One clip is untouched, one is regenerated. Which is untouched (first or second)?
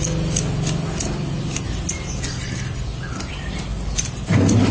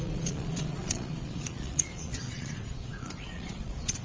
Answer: first